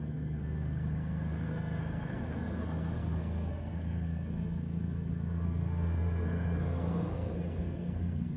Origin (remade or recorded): remade